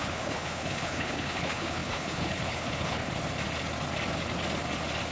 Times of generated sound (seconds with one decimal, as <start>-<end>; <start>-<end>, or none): 0.0-3.1